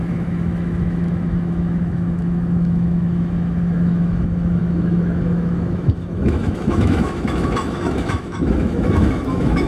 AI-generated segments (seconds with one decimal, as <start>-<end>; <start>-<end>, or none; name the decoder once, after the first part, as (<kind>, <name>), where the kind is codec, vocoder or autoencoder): 0.0-9.7 (autoencoder, DAC-VAE)